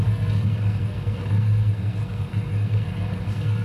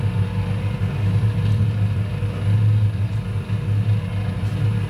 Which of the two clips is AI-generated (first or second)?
first